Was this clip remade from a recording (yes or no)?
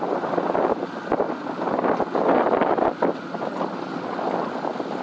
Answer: no